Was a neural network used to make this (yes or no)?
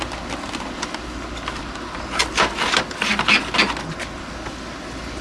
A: no